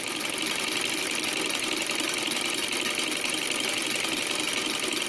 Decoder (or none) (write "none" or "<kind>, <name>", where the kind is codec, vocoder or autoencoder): none